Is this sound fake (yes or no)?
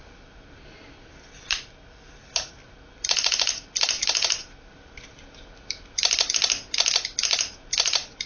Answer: no